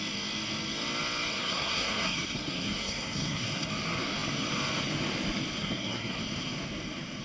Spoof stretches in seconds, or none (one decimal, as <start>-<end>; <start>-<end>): 1.3-3.7; 5.6-6.2